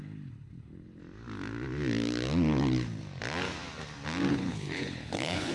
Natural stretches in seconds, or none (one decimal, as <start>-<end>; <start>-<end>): 1.0-4.3